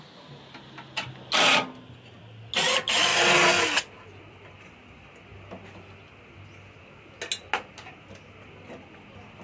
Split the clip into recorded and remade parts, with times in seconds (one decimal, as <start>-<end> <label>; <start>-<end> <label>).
0.0-9.4 recorded